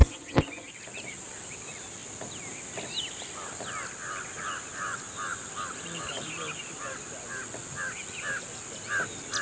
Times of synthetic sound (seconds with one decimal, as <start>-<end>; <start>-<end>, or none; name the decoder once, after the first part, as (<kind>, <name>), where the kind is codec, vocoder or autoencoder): 0.0-0.7 (vocoder, Vocos)